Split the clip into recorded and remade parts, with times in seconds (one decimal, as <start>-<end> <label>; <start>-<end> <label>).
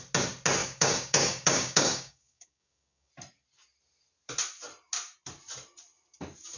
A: 0.0-0.6 recorded; 0.6-3.1 remade; 3.1-6.6 recorded